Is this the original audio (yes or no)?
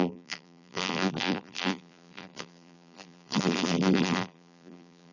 no